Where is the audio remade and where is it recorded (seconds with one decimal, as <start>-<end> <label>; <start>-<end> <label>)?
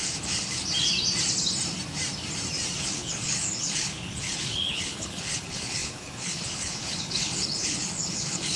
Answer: 0.0-0.6 remade; 0.6-2.8 recorded; 2.8-8.6 remade